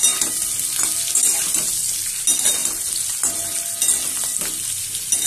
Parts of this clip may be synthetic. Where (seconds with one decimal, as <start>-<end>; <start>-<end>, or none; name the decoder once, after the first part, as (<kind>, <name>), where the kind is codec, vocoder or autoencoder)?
none